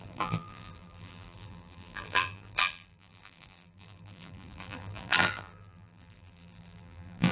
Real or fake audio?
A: fake